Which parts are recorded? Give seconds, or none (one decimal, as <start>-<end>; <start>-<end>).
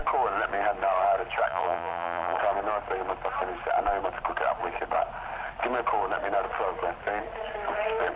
0.0-1.5; 2.4-8.2